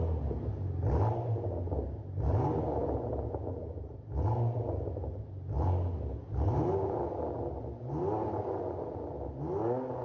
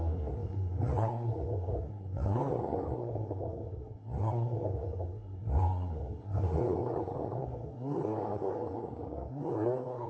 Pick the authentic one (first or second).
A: first